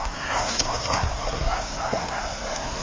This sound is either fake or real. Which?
fake